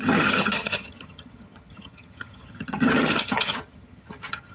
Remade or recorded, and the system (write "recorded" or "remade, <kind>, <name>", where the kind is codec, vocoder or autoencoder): remade, vocoder, HiFi-GAN